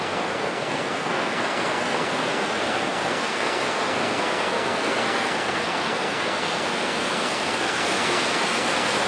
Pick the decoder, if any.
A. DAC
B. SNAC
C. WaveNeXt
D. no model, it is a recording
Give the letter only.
B